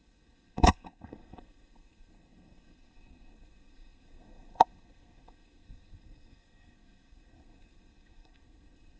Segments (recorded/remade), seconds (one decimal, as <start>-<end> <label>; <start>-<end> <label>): 0.0-9.0 remade